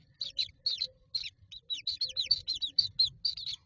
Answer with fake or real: real